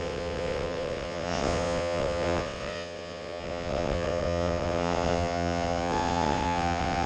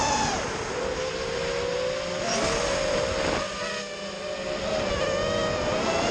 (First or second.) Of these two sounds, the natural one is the second